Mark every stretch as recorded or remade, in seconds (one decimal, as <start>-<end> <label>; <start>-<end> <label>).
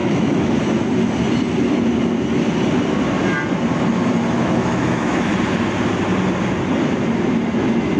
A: 0.0-0.6 remade; 0.6-4.0 recorded; 4.0-5.3 remade; 5.3-8.0 recorded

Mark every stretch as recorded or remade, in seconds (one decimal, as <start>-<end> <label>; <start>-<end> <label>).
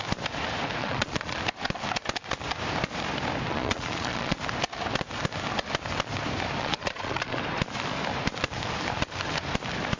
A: 0.0-0.8 recorded; 0.8-1.4 remade; 1.4-3.5 recorded; 3.5-4.4 remade; 4.4-6.6 recorded; 6.6-7.4 remade; 7.4-10.0 recorded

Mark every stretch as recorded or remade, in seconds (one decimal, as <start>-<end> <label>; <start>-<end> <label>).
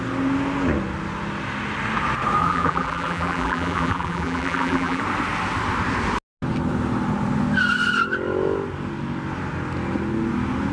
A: 0.0-2.4 recorded; 2.4-5.0 remade; 5.0-10.7 recorded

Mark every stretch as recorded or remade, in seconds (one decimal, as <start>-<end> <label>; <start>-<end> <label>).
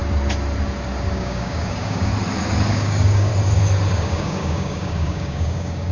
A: 0.0-1.1 recorded; 1.1-2.1 remade; 2.1-2.7 recorded; 2.7-3.3 remade; 3.3-3.9 recorded; 3.9-5.9 remade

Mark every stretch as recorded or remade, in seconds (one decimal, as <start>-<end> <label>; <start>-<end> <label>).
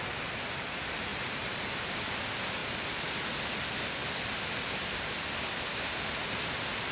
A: 0.0-1.1 recorded; 1.1-1.6 remade; 1.6-6.9 recorded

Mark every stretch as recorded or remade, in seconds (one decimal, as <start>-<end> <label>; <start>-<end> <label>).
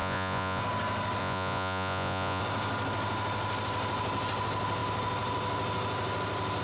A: 0.0-0.6 remade; 0.6-1.2 recorded; 1.2-2.4 remade; 2.4-6.6 recorded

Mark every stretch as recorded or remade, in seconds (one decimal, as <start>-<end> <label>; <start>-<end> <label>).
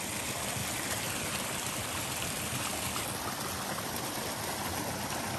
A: 0.0-5.4 recorded